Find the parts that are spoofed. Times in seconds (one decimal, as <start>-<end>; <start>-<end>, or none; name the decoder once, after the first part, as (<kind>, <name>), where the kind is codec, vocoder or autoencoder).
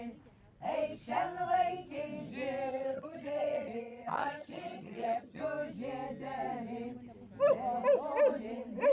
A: 2.7-5.4 (vocoder, HiFi-GAN)